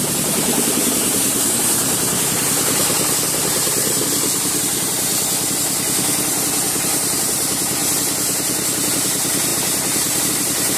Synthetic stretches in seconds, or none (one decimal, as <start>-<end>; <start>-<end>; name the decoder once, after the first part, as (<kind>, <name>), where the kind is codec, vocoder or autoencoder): 0.0-3.8 (vocoder, BigVGAN v2); 4.6-5.1; 6.8-7.8; 8.9-10.8